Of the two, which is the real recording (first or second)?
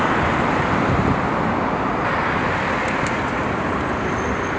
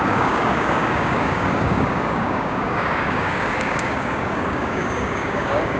first